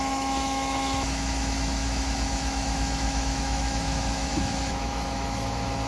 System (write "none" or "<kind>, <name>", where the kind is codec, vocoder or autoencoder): autoencoder, DAC-VAE